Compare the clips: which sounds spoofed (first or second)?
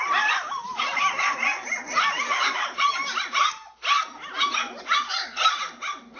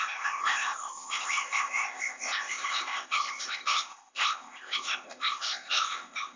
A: second